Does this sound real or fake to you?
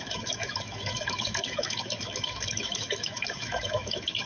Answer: fake